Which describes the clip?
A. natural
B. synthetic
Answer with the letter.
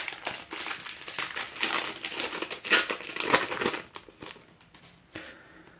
A